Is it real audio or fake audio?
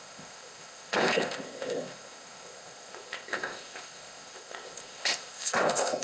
fake